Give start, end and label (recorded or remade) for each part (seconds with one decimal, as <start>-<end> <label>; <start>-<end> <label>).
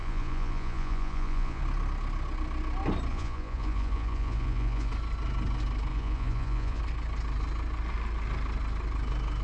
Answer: 0.0-1.6 remade; 1.6-3.1 recorded; 3.1-4.9 remade; 4.9-5.9 recorded; 5.9-6.8 remade; 6.8-9.4 recorded